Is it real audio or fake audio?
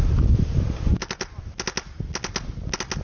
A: real